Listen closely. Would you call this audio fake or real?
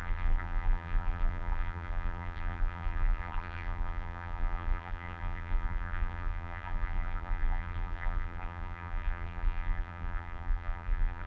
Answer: fake